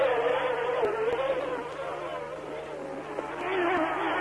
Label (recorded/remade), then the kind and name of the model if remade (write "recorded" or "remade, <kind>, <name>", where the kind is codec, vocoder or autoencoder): recorded